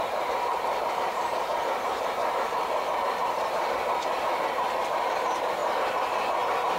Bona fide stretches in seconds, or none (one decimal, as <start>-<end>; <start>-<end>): 2.2-2.9; 4.3-4.9; 5.6-6.8

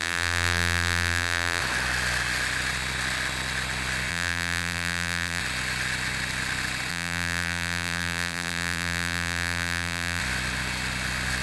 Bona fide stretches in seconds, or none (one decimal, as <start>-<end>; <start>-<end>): 1.6-4.1; 5.4-6.9; 10.2-11.4

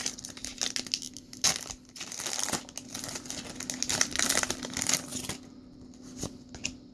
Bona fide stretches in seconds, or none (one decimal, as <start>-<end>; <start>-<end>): 0.4-4.2